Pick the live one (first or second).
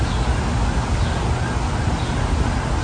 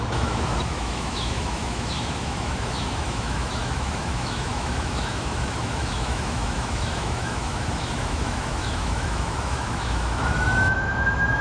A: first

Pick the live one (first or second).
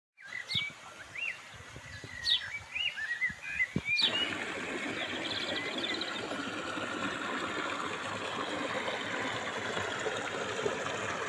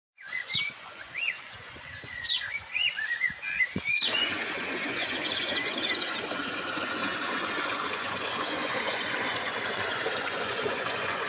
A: first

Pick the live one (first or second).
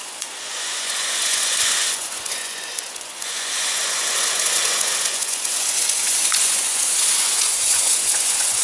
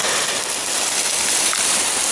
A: second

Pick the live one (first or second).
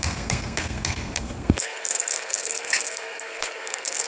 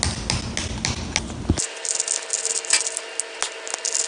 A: second